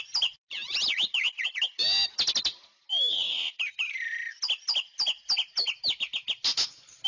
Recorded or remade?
recorded